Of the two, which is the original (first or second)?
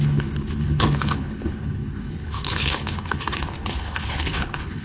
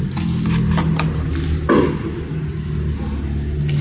second